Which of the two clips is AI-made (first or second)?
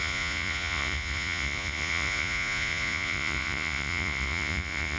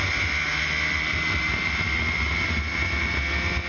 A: first